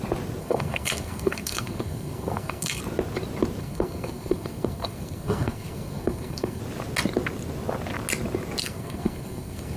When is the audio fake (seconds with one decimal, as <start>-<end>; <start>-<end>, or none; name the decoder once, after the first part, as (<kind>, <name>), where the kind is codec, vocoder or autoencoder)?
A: 0.4-2.8 (codec, SNAC); 3.6-6.6; 8.6-9.8